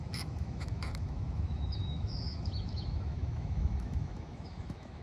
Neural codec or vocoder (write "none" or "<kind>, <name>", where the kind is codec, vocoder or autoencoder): autoencoder, DAC-VAE